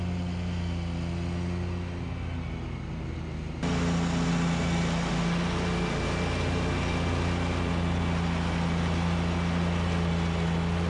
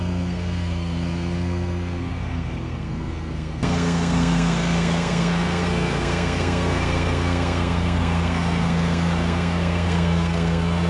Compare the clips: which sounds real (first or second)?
first